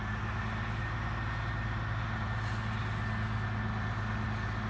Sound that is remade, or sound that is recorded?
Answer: recorded